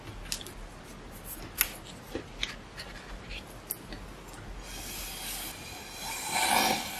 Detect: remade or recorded recorded